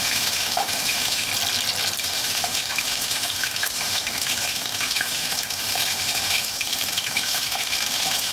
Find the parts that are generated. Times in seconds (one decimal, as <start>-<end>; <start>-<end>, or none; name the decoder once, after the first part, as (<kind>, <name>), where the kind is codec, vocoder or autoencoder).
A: 0.0-1.3 (autoencoder, DAC-VAE); 2.0-8.3